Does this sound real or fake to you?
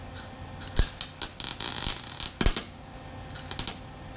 real